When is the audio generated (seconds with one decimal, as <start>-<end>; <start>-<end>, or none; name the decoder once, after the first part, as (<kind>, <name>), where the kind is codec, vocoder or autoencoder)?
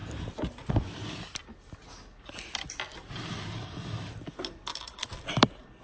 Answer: none